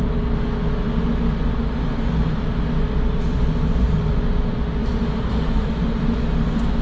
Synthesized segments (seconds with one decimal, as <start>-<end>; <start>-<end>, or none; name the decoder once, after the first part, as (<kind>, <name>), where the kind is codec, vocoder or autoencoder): 4.8-5.7 (vocoder, BigVGAN v2)

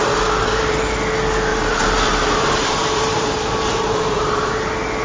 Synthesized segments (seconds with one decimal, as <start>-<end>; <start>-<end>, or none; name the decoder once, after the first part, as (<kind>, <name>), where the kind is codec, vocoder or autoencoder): 0.0-0.8 (vocoder, BigVGAN v2); 1.5-4.5

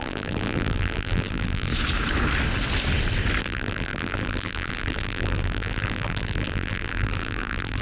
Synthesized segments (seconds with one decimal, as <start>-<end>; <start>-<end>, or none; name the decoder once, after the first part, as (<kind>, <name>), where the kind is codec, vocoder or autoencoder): 0.0-1.7 (vocoder, BigVGAN v2); 3.4-7.8

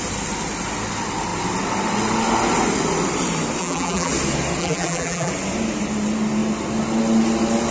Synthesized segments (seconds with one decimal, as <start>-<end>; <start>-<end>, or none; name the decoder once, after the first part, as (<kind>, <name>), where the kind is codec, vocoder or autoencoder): 3.6-4.1 (vocoder, BigVGAN v2); 4.6-5.3

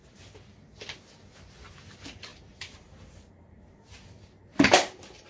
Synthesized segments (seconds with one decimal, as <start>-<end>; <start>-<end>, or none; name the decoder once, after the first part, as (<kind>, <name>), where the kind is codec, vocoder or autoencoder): 2.3-5.3 (vocoder, BigVGAN v2)

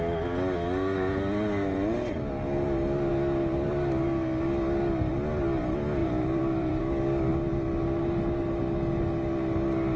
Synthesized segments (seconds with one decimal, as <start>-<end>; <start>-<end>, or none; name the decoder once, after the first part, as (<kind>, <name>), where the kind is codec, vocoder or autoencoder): 6.0-6.8 (vocoder, BigVGAN v2)